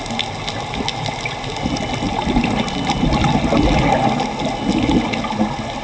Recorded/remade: recorded